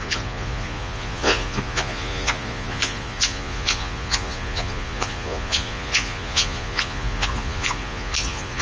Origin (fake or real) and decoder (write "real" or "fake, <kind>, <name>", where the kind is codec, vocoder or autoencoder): fake, vocoder, Vocos